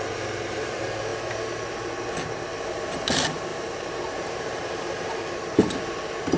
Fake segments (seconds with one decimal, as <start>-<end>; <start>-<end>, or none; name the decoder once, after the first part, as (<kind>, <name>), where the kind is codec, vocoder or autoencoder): 3.5-4.8 (vocoder, BigVGAN v2)